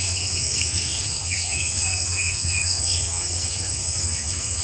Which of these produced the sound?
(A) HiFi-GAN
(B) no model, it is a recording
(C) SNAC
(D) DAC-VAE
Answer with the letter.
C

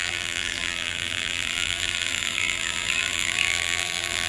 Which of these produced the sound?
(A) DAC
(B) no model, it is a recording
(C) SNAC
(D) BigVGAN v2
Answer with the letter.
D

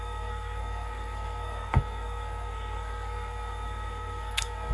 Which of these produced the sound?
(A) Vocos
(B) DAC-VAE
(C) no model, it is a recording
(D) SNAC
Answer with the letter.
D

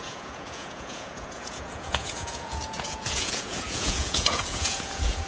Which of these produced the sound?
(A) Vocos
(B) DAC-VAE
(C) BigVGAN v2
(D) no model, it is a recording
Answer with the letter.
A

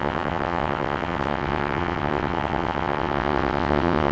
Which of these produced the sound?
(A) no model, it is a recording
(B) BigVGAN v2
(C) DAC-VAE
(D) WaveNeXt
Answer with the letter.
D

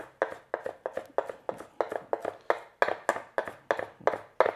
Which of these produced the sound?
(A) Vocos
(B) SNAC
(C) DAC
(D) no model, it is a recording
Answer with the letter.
D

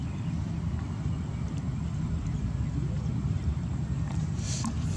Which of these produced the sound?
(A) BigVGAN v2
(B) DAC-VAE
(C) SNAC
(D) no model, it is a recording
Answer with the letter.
D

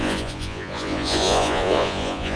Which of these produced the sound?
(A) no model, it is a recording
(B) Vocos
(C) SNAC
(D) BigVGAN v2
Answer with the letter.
B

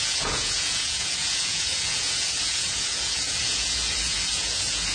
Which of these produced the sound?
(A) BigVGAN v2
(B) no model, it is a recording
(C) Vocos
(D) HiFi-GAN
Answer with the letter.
C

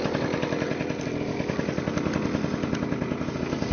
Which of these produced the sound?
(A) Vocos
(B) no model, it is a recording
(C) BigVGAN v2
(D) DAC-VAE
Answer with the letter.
B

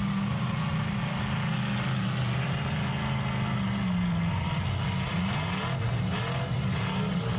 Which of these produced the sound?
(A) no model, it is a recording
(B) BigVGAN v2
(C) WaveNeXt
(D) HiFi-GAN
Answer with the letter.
A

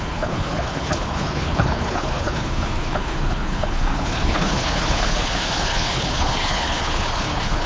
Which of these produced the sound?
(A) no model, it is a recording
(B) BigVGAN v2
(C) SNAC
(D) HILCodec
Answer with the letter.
D